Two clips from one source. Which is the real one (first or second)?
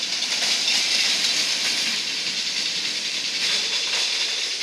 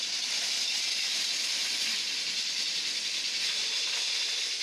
second